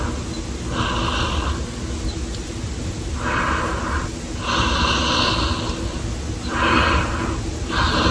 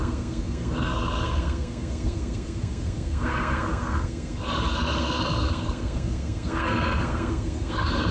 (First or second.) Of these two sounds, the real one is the first